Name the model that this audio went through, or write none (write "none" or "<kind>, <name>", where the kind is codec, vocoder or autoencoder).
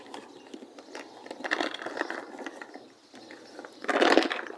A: none